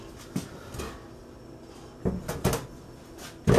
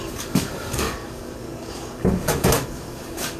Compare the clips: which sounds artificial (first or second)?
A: second